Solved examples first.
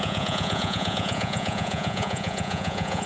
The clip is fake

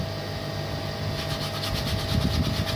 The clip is real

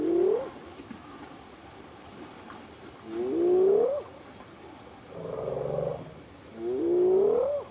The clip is real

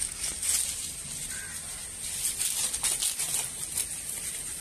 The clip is real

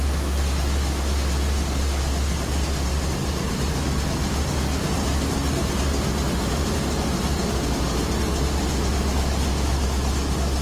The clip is real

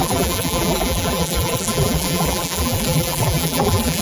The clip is fake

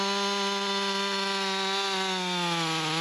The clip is real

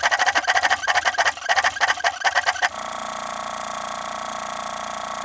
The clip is real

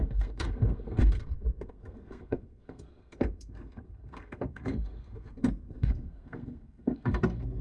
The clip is fake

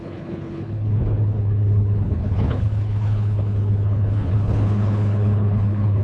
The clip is fake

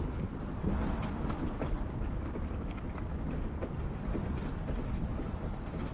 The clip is real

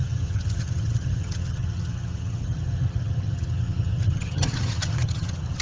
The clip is fake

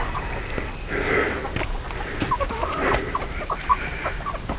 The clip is real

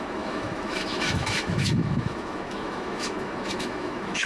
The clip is fake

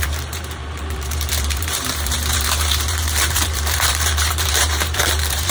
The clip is fake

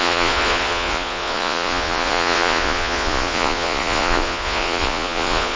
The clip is fake